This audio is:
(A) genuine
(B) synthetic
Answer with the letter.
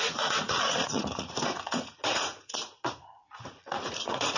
B